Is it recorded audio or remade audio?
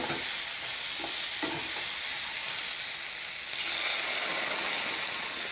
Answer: recorded